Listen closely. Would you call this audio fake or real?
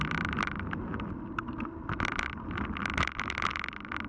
real